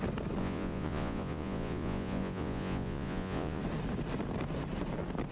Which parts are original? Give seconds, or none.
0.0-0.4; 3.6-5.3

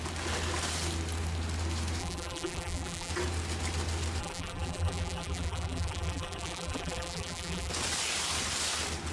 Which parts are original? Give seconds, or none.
0.0-2.0; 3.1-4.2; 7.7-9.1

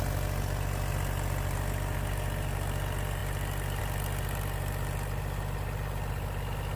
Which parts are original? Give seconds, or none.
0.0-6.8

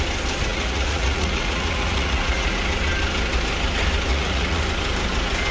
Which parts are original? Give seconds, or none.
0.0-0.5; 2.6-4.1; 4.6-5.5

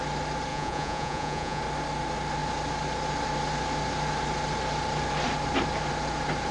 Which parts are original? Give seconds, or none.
0.0-0.5; 1.6-6.5